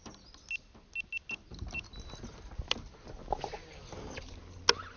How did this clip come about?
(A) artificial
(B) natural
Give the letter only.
B